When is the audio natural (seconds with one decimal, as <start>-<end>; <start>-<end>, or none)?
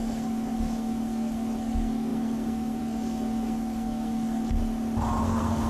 4.6-5.2